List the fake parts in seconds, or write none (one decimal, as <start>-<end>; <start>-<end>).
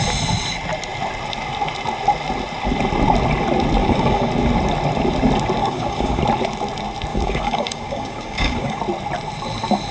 3.8-4.3; 5.6-6.2; 7.1-8.8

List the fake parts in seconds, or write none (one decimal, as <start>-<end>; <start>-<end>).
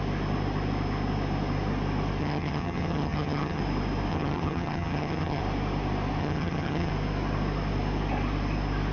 2.2-3.6; 4.1-5.4; 6.2-6.9